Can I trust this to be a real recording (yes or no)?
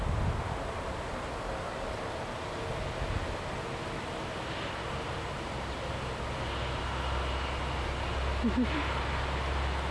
yes